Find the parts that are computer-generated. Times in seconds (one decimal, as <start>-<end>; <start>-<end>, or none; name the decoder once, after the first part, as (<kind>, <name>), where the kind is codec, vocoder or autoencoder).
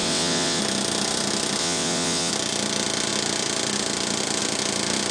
0.0-0.6 (vocoder, WaveNeXt); 1.6-2.3